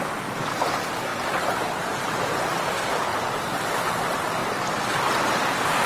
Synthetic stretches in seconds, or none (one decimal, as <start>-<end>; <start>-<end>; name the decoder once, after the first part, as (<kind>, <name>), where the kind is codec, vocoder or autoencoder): 3.1-3.8 (vocoder, BigVGAN v2)